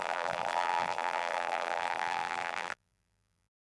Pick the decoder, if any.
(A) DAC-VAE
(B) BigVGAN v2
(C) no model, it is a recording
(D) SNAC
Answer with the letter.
B